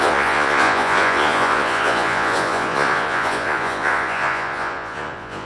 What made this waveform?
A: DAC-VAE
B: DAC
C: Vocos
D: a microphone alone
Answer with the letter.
C